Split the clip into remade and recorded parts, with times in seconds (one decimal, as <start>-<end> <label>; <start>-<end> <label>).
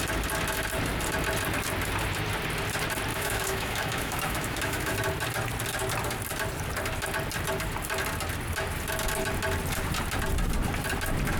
0.0-3.1 recorded; 3.1-4.9 remade; 4.9-11.4 recorded